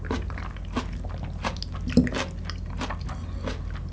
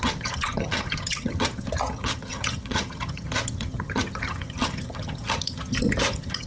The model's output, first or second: second